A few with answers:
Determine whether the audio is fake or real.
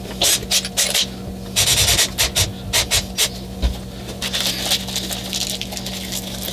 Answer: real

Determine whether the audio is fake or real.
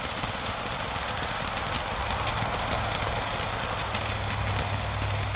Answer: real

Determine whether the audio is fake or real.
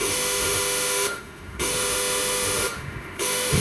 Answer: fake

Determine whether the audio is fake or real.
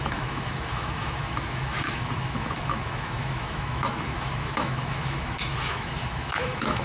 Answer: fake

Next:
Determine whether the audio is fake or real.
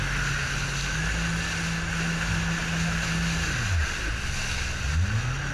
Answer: real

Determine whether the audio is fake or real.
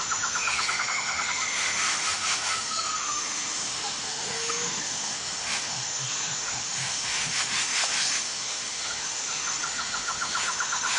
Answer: fake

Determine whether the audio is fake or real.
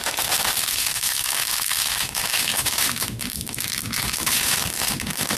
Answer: fake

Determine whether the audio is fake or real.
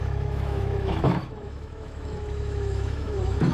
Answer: fake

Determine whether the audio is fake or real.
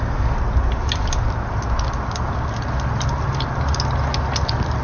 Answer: real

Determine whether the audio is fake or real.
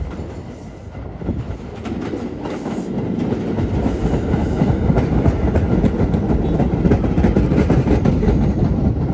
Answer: real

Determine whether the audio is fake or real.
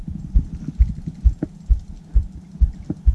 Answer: real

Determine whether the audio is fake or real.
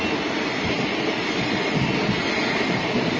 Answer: real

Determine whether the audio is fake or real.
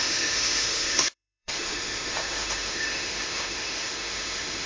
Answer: fake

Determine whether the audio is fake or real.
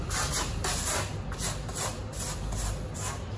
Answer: real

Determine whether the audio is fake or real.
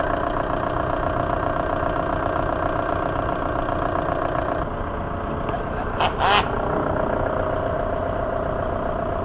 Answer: real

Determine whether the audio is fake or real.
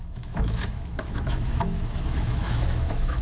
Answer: fake